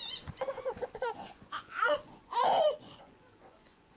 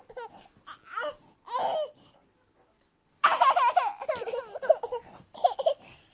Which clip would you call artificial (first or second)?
first